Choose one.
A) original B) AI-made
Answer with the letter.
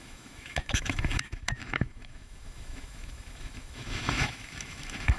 B